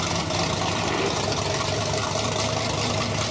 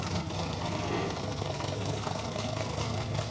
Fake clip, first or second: second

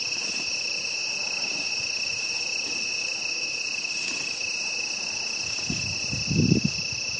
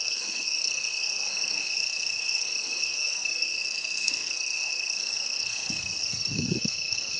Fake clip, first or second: second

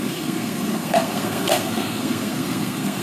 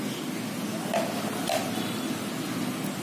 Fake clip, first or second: first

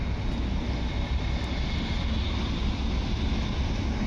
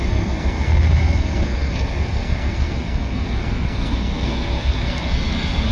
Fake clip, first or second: second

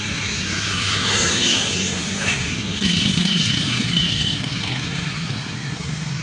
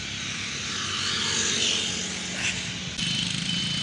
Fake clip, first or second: first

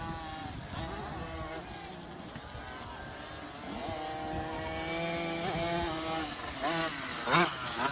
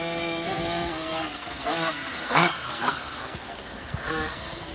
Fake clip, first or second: second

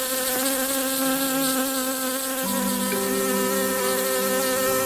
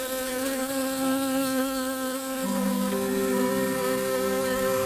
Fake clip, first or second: second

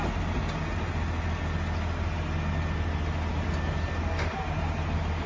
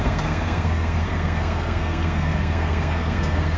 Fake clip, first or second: second